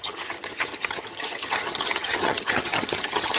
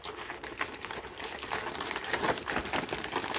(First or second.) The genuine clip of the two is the second